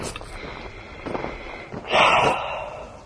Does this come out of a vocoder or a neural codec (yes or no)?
no